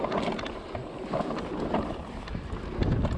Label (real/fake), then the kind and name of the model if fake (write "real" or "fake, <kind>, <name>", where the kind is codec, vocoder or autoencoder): real